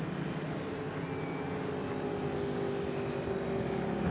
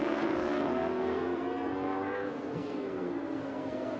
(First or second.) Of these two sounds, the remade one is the second